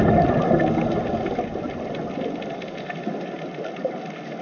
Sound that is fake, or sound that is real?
real